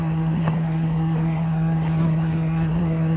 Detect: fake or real fake